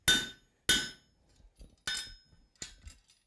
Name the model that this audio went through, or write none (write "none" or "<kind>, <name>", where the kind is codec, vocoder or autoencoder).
none